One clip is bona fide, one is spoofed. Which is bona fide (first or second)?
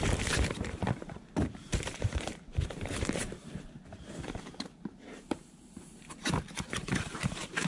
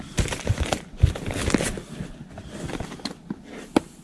second